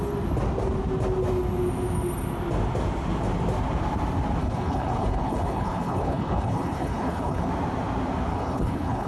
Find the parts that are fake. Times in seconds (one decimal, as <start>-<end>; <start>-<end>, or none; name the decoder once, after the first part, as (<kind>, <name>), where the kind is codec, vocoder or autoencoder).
4.4-7.5 (codec, HILCodec); 8.3-9.1

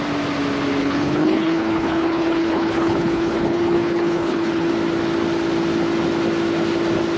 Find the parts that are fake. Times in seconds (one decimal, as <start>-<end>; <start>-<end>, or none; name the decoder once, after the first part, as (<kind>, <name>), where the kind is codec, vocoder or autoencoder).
0.8-4.7 (codec, HILCodec)